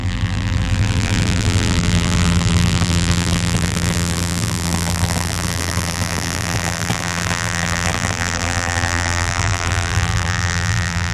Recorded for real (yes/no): no